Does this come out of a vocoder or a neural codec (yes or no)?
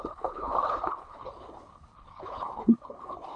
yes